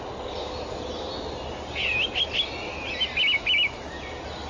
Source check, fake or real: real